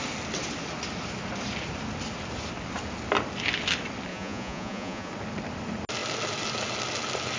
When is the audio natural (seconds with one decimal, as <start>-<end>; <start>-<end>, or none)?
0.0-4.1; 5.1-7.4